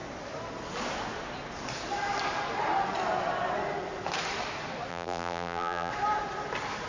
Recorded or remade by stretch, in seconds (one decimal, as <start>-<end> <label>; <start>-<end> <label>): 0.0-4.9 recorded; 4.9-5.9 remade; 5.9-6.9 recorded